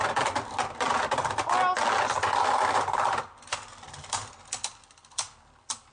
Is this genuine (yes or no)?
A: yes